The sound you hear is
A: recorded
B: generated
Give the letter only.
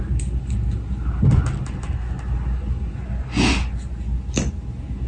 A